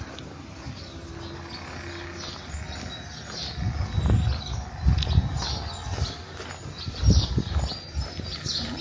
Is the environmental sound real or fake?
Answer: real